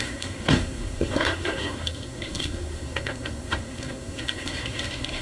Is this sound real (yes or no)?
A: no